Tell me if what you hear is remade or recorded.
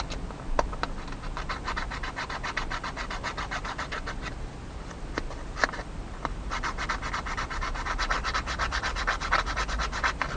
recorded